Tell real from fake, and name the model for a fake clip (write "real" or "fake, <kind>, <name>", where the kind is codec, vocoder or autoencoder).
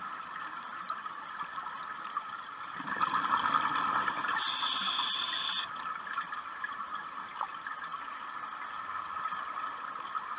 real